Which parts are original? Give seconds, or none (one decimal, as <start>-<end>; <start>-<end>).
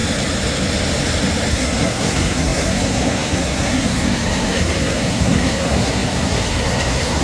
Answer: 0.0-1.5